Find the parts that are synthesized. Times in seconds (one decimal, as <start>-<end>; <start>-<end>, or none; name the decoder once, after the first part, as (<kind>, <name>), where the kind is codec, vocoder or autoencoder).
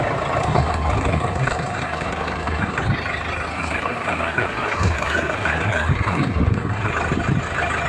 0.4-2.8 (codec, SNAC); 3.5-6.9